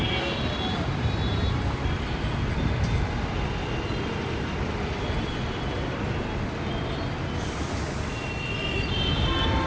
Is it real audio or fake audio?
real